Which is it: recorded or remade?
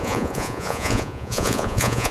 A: remade